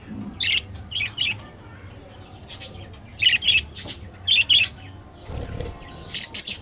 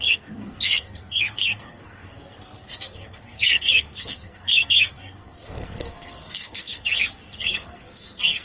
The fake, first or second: second